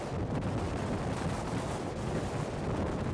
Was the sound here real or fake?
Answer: real